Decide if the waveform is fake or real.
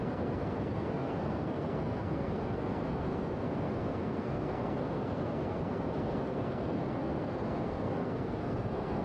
fake